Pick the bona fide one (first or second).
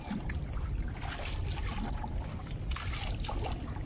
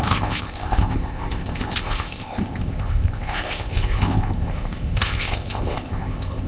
first